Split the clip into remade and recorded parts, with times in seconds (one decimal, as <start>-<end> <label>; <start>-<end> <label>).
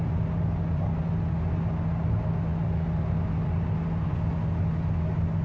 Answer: 0.0-5.4 recorded